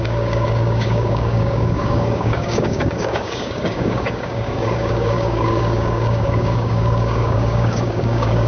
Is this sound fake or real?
fake